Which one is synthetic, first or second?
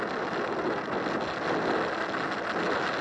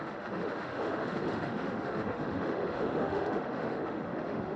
second